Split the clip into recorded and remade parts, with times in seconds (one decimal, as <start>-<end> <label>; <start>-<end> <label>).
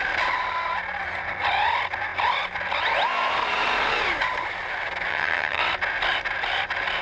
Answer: 0.0-5.1 recorded; 5.1-5.6 remade; 5.6-7.0 recorded